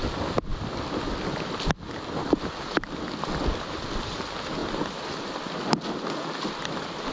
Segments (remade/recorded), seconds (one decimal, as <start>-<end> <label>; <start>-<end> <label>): 0.0-7.1 recorded